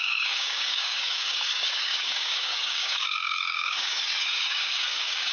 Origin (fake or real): fake